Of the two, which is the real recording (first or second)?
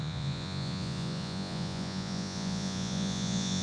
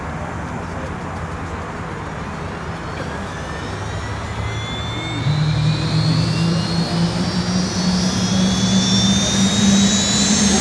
second